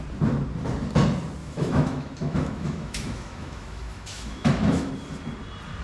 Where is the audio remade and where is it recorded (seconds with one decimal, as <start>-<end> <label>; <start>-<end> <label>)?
0.0-1.4 recorded; 1.4-4.9 remade; 4.9-5.8 recorded